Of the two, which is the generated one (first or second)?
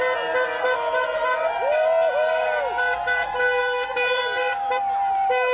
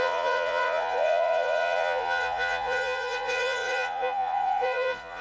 second